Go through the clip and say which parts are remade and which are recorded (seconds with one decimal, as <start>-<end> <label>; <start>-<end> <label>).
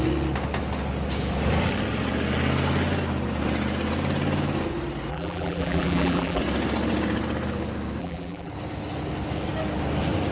0.0-5.1 recorded; 5.1-6.4 remade; 6.4-8.0 recorded; 8.0-8.5 remade; 8.5-10.3 recorded